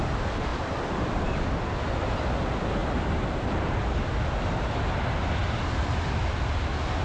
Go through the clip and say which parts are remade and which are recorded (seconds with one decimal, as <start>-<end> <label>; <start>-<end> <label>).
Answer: 0.0-0.5 recorded; 0.5-1.1 remade; 1.1-2.8 recorded; 2.8-4.2 remade; 4.2-5.4 recorded; 5.4-6.2 remade; 6.2-7.0 recorded